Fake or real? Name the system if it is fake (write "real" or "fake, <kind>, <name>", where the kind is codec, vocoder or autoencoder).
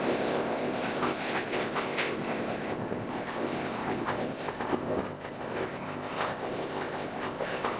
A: fake, codec, ZipCodec